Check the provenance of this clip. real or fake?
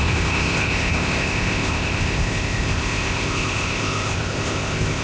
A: fake